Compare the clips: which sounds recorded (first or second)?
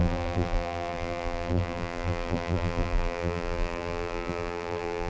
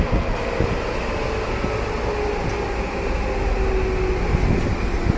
second